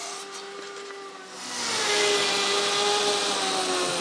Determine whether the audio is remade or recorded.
recorded